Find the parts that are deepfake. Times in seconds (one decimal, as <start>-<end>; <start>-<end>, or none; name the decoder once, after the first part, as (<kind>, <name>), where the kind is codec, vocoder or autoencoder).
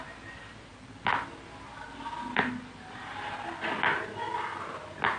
none